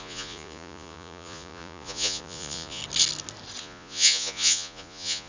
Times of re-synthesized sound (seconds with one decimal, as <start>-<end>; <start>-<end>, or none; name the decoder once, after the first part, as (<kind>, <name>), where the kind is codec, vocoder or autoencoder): 0.0-2.8 (vocoder, Vocos); 3.6-5.3